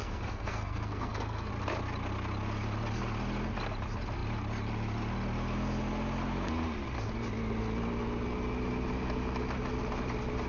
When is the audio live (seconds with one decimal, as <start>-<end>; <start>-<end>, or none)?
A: 1.5-10.5